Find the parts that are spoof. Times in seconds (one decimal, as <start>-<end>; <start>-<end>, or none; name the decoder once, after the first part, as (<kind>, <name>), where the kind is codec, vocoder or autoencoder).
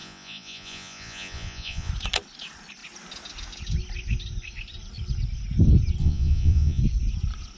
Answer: 0.0-1.9 (vocoder, Vocos); 6.0-6.8